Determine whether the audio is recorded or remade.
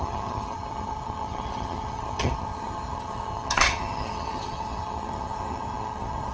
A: remade